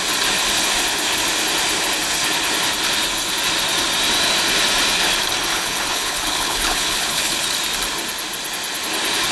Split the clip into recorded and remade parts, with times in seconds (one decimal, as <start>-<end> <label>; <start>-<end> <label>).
0.0-5.5 recorded; 5.5-7.4 remade; 7.4-9.3 recorded

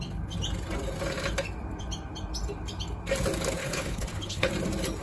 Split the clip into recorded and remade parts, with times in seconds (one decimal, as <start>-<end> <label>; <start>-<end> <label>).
0.0-3.6 recorded; 3.6-4.5 remade; 4.5-5.0 recorded

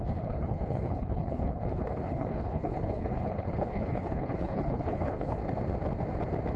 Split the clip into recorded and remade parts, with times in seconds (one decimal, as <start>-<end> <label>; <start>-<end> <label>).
0.0-5.4 remade; 5.4-6.6 recorded

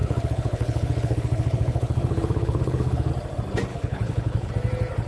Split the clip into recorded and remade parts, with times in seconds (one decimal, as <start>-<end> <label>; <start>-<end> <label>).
0.0-3.1 remade; 3.1-3.7 recorded; 3.7-4.5 remade; 4.5-5.1 recorded